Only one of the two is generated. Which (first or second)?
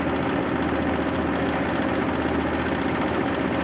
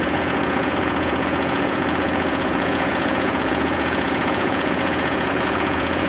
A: second